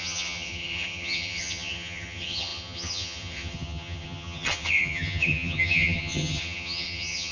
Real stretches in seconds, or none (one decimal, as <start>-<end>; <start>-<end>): none